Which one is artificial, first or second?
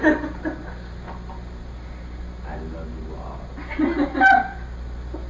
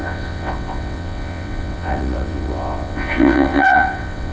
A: second